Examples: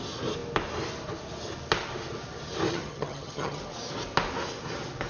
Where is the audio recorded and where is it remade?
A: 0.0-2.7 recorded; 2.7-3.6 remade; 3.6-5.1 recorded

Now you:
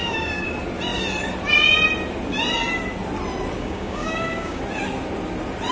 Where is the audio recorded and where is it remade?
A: 0.0-0.5 remade; 0.5-3.6 recorded; 3.6-4.6 remade; 4.6-5.7 recorded

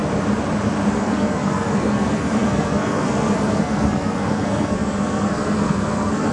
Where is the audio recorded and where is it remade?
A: 0.0-0.9 recorded; 0.9-6.3 remade

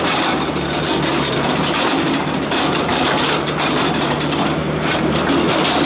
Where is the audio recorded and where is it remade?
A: 0.0-1.1 recorded; 1.1-3.9 remade; 3.9-5.9 recorded

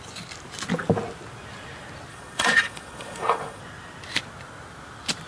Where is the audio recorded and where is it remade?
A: 0.0-2.1 recorded; 2.1-3.6 remade; 3.6-5.3 recorded